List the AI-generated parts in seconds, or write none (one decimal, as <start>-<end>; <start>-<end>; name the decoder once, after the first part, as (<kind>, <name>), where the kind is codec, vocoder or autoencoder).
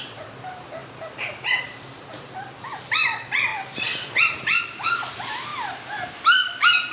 0.0-5.5 (vocoder, BigVGAN v2)